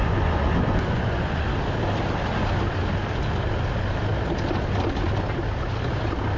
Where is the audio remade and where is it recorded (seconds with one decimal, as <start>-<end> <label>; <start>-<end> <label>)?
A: 0.0-1.4 remade; 1.4-6.4 recorded